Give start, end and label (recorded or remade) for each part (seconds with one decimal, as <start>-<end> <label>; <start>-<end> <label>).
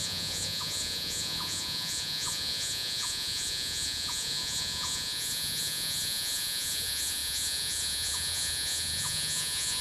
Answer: 0.0-9.8 remade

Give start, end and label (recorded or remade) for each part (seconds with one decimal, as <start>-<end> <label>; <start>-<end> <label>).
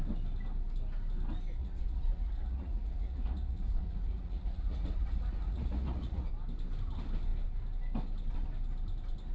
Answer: 0.0-1.6 recorded; 1.6-6.3 remade; 6.3-9.3 recorded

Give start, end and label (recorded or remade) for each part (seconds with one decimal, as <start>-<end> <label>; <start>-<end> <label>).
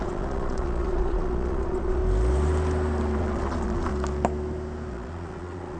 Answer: 0.0-2.0 remade; 2.0-3.2 recorded; 3.2-3.9 remade; 3.9-4.9 recorded; 4.9-5.8 remade